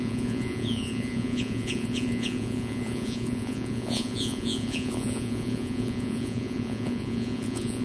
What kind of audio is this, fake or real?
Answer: fake